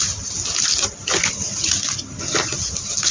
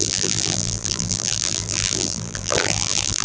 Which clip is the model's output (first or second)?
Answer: second